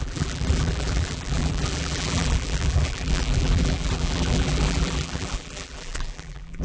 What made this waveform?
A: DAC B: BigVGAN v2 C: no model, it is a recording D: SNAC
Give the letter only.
B